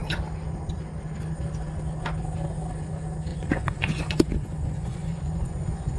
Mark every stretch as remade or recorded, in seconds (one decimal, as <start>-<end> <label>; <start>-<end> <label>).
0.0-3.3 recorded; 3.3-6.0 remade